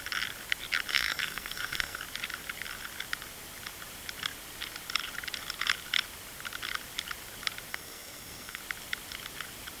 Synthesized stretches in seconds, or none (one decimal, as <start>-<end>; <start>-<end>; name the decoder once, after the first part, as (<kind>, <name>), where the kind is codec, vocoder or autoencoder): 0.9-2.0 (codec, SNAC); 7.7-8.6